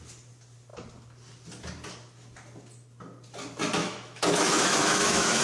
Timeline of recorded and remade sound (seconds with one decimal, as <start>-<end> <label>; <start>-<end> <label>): 0.0-3.8 recorded; 3.8-5.4 remade